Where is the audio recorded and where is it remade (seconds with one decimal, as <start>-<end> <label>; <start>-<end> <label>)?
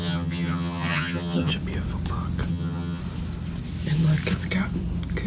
0.0-1.5 remade; 1.5-2.5 recorded; 2.5-3.0 remade; 3.0-5.3 recorded